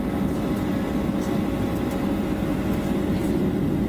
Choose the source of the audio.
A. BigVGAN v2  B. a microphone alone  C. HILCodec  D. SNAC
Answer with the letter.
B